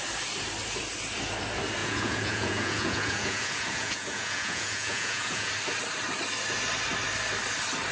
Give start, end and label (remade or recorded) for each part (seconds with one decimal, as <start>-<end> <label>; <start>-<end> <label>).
0.0-1.8 recorded; 1.8-5.5 remade; 5.5-7.9 recorded